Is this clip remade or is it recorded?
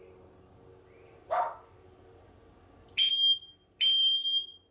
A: recorded